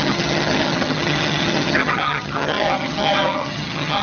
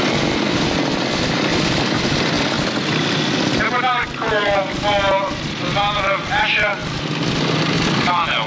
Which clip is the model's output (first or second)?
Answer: first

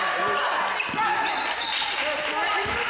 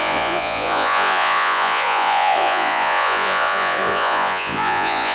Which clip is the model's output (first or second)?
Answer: second